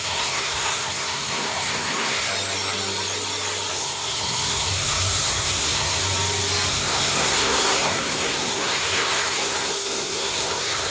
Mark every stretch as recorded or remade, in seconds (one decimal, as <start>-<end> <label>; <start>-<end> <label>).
0.0-2.3 remade; 2.3-3.7 recorded; 3.7-6.0 remade; 6.0-6.7 recorded; 6.7-10.9 remade